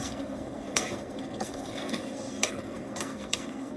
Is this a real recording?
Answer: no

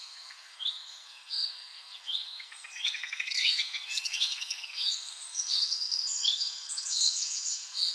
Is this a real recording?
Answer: no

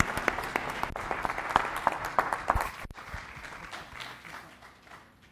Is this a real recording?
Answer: yes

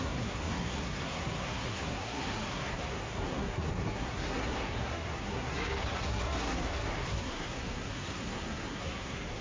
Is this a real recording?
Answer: no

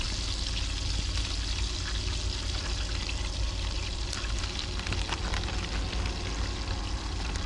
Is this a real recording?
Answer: yes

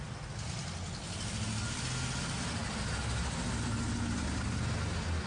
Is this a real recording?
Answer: yes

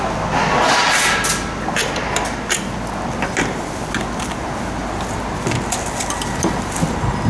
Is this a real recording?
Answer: yes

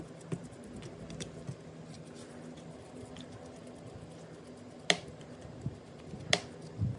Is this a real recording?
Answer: yes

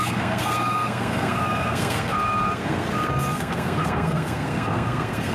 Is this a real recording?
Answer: no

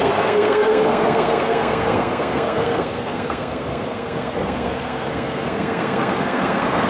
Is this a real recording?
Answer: no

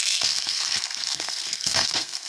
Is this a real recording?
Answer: no